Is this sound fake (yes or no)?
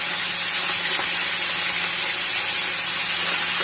no